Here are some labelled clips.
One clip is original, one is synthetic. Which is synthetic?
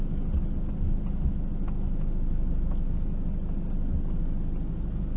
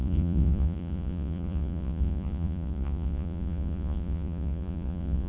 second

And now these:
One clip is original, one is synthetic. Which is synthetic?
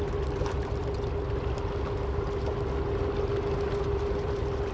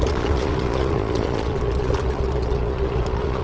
second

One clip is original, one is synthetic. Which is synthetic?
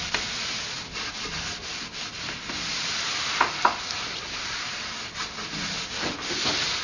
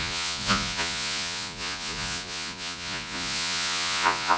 second